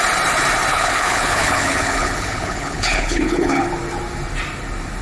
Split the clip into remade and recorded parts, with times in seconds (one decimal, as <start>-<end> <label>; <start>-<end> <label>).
0.0-0.7 recorded; 0.7-3.7 remade; 3.7-5.0 recorded